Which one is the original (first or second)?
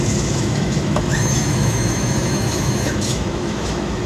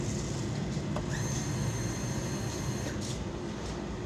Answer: second